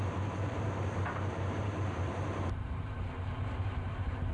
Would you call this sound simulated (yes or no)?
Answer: yes